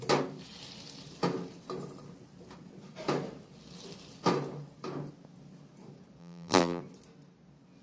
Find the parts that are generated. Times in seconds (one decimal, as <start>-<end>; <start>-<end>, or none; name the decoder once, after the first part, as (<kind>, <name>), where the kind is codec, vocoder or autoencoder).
6.2-6.8 (vocoder, BigVGAN v2)